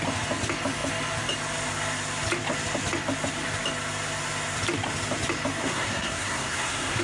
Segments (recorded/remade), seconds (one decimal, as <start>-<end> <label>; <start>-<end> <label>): 0.0-5.6 recorded; 5.6-7.0 remade